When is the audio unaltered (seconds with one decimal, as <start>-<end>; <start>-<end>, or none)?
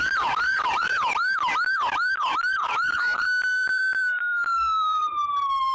none